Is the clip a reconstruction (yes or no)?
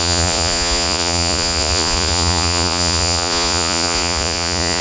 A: yes